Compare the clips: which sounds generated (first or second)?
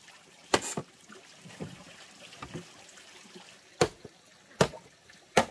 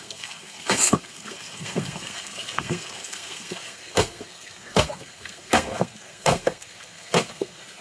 second